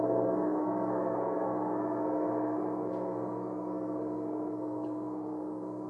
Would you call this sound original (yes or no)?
no